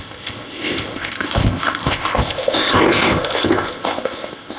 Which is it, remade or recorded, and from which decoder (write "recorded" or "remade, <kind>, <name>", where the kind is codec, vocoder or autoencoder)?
remade, codec, ZipCodec